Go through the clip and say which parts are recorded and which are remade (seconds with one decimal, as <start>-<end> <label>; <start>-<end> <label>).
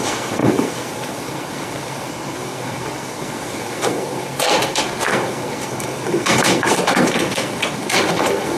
0.0-8.6 remade